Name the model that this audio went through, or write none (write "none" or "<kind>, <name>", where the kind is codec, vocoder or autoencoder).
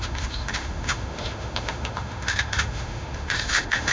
autoencoder, DAC-VAE